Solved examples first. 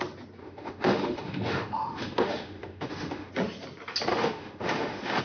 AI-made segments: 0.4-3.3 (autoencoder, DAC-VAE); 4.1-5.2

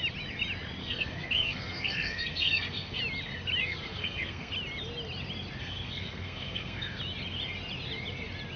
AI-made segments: 0.8-3.0 (codec, SNAC); 3.6-4.5; 5.6-7.0

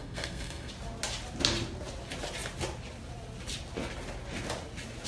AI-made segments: 0.0-0.7 (codec, SNAC)

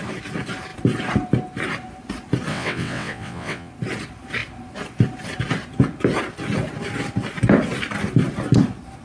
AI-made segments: 2.5-3.7 (vocoder, WaveNeXt)

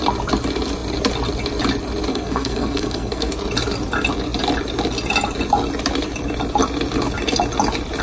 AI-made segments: 2.1-3.3 (codec, SNAC)

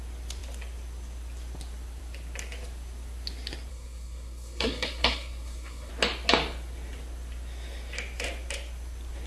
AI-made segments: 3.7-5.9 (codec, SNAC)

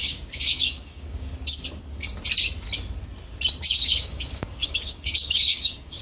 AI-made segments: 0.0-1.3 (codec, DAC); 3.6-6.0